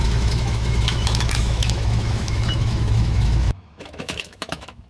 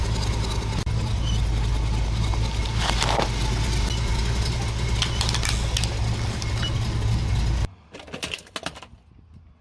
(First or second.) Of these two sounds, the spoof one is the first